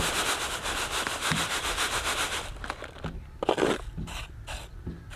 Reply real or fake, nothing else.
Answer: real